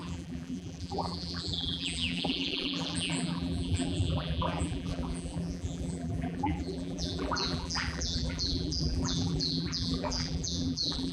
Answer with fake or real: fake